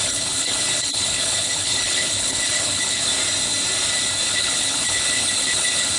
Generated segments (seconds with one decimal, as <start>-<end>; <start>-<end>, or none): 0.0-3.1; 4.3-6.0